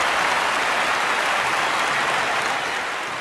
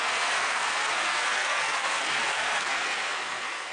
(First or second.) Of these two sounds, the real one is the first